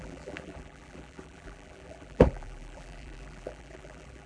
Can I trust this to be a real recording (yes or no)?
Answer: no